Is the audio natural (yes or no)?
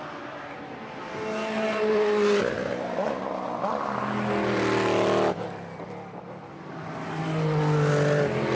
yes